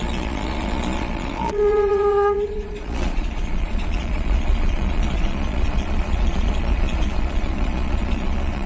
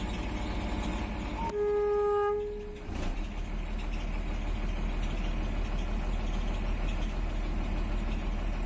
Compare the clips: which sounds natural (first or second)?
second